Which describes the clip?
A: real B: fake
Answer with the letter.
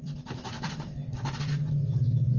B